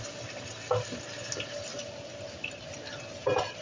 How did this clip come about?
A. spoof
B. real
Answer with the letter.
B